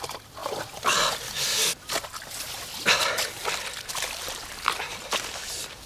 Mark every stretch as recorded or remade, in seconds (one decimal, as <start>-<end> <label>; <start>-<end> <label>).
0.0-5.9 remade